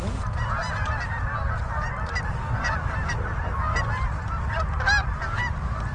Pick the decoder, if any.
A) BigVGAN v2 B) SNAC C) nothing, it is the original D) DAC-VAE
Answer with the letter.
C